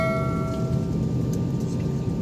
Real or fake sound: real